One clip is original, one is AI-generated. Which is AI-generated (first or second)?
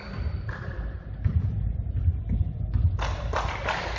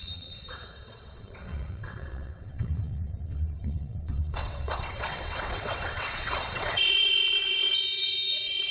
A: second